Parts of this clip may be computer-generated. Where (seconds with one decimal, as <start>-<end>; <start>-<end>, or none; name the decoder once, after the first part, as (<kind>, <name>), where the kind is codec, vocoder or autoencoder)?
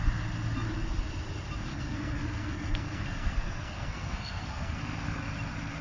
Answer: 1.7-5.2 (codec, SNAC)